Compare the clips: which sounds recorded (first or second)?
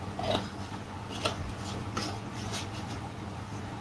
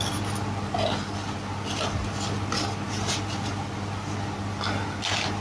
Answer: second